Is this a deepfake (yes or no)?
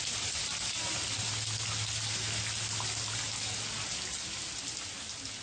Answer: no